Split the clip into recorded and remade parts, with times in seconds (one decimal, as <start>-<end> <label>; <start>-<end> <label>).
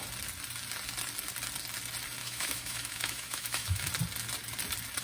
0.0-2.2 recorded; 2.2-3.9 remade; 3.9-5.0 recorded